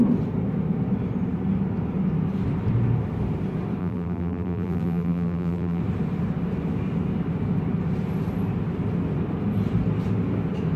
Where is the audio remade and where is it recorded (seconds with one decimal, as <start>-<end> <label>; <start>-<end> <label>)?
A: 0.0-3.8 recorded; 3.8-5.8 remade; 5.8-10.8 recorded